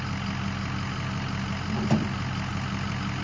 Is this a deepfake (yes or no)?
no